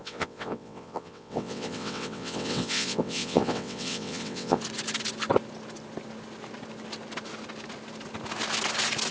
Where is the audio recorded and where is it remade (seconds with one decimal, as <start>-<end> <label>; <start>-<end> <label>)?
0.0-4.6 remade; 4.6-9.1 recorded